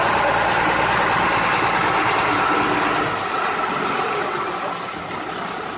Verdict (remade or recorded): recorded